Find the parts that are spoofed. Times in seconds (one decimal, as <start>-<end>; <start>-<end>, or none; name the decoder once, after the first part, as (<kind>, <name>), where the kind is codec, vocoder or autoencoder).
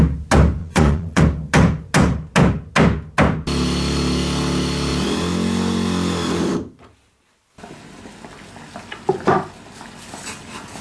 0.6-1.2 (vocoder, Vocos)